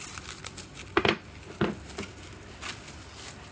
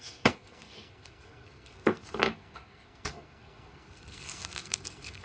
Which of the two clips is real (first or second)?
first